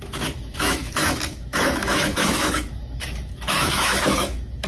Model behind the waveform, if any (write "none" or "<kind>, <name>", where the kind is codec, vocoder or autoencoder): autoencoder, DAC-VAE